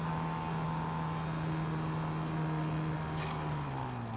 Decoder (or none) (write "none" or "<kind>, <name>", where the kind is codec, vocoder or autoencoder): none